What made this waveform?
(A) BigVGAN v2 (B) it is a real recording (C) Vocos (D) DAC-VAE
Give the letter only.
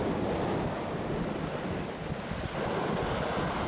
B